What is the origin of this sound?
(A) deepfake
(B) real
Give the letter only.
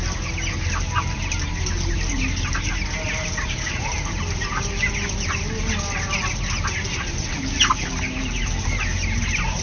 B